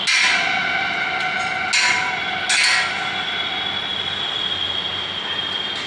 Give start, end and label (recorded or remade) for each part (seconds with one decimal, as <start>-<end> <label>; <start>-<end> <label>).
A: 0.0-5.9 recorded